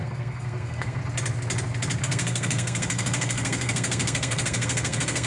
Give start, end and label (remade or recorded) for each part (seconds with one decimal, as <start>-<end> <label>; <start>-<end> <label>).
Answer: 0.0-1.0 remade; 1.0-2.0 recorded; 2.0-5.3 remade

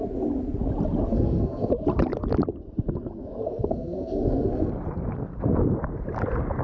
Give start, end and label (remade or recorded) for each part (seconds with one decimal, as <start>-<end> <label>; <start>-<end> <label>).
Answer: 0.0-1.1 recorded; 1.1-1.7 remade; 1.7-3.4 recorded; 3.4-4.7 remade; 4.7-6.6 recorded